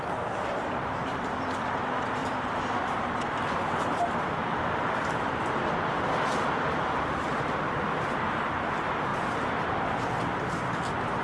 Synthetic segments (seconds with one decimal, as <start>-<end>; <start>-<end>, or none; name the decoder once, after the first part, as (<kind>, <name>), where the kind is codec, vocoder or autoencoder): 0.0-9.1 (vocoder, BigVGAN v2)